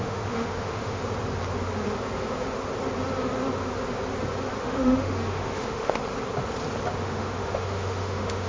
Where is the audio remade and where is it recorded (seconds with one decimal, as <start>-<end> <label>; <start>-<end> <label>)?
0.0-1.0 remade; 1.0-4.6 recorded; 4.6-6.0 remade; 6.0-7.0 recorded; 7.0-8.5 remade